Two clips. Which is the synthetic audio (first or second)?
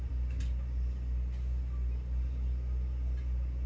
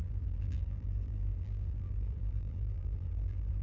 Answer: second